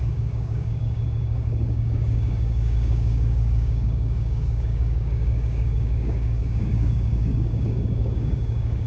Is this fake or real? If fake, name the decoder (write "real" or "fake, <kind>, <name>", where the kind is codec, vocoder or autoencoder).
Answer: fake, codec, DAC